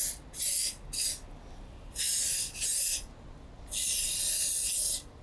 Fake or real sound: real